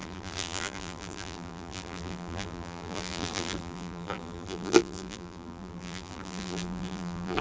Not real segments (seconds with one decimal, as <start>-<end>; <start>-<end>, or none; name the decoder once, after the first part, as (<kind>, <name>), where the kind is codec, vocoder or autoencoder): 0.0-7.4 (vocoder, BigVGAN v2)